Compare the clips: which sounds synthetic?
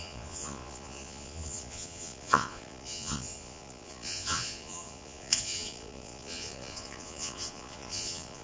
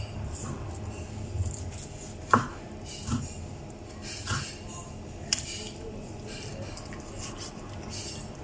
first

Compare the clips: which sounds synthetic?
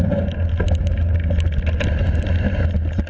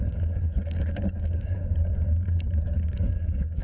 second